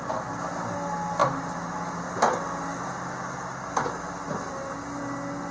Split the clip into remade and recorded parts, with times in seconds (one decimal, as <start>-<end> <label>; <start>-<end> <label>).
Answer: 0.0-5.5 recorded

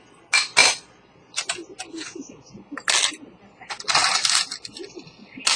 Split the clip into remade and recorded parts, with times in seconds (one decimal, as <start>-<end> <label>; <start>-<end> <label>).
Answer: 0.0-5.6 recorded

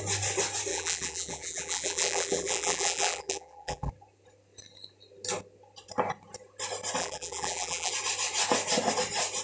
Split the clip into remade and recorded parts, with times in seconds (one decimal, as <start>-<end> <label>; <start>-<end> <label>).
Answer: 0.0-0.7 recorded; 0.7-3.9 remade; 3.9-7.0 recorded; 7.0-7.9 remade; 7.9-9.4 recorded